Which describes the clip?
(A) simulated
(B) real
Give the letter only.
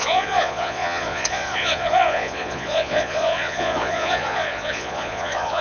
A